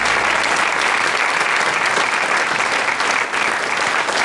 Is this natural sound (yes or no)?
yes